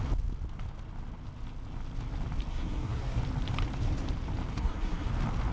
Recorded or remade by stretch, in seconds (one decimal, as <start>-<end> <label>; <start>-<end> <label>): 0.0-2.5 recorded; 2.5-3.2 remade; 3.2-4.5 recorded; 4.5-5.1 remade; 5.1-5.5 recorded